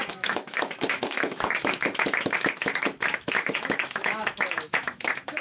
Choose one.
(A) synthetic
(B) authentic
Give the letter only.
A